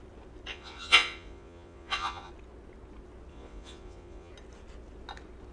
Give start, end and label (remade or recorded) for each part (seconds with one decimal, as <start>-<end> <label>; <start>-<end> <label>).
0.0-0.5 recorded; 0.5-2.3 remade; 2.3-3.3 recorded; 3.3-4.3 remade; 4.3-5.5 recorded